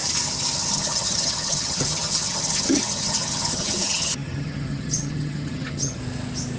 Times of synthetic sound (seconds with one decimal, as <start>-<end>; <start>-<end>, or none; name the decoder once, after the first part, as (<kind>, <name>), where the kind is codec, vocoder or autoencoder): 0.7-6.0 (vocoder, HiFi-GAN)